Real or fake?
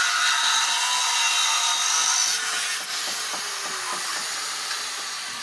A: real